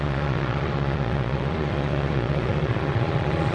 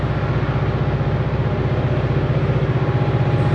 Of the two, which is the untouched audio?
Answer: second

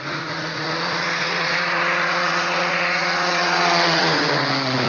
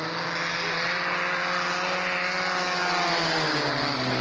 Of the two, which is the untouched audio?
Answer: second